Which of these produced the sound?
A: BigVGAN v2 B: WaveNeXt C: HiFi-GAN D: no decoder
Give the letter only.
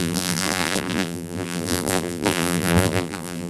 A